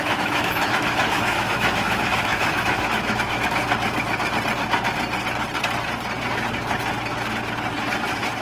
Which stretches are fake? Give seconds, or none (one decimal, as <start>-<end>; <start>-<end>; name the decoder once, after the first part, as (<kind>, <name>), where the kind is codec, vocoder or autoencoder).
0.0-3.6 (autoencoder, DAC-VAE)